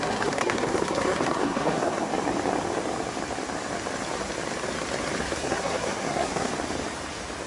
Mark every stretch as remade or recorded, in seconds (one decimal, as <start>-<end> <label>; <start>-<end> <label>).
0.0-2.1 remade; 2.1-5.2 recorded; 5.2-6.5 remade; 6.5-7.5 recorded